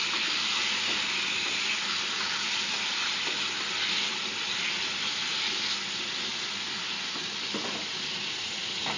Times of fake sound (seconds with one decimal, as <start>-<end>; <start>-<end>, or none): none